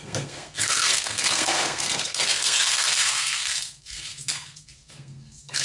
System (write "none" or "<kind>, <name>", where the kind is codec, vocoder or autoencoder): codec, SNAC